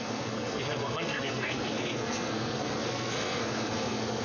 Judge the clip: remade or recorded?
remade